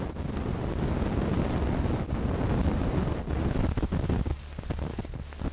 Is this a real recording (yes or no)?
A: yes